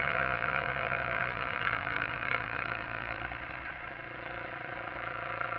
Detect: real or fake fake